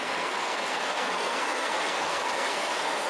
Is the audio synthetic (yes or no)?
yes